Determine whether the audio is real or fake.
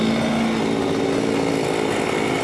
real